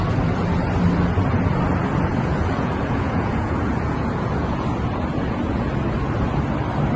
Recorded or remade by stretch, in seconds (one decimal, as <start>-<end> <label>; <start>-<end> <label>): 0.0-2.1 recorded; 2.1-5.7 remade; 5.7-7.0 recorded